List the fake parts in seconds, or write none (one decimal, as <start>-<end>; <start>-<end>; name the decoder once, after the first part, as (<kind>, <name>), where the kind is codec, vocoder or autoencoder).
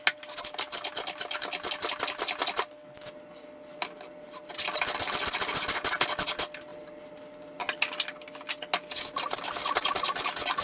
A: none